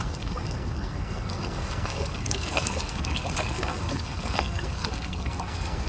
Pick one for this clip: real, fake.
fake